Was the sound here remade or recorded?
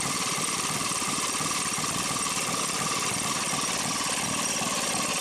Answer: remade